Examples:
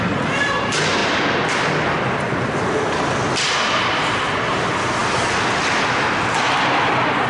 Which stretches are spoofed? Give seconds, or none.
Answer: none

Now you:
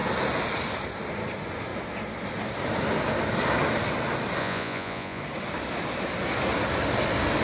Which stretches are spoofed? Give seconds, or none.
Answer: 4.4-5.2 (vocoder, Vocos)

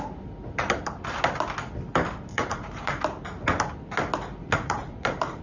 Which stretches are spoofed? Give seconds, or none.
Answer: 2.3-3.0 (vocoder, Vocos); 4.4-5.4